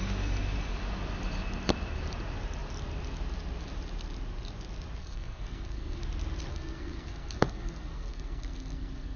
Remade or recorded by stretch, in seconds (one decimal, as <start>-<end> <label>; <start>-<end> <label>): 0.0-5.0 recorded; 5.0-6.0 remade; 6.0-6.5 recorded; 6.5-9.2 remade